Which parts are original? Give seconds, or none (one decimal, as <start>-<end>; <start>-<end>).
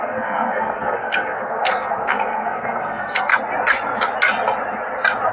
3.3-5.3